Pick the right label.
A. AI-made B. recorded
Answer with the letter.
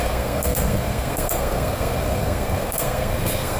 A